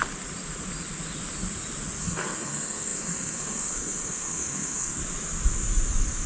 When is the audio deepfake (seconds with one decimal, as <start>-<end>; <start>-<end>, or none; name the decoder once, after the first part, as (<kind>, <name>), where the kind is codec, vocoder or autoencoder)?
2.0-5.0 (codec, SNAC)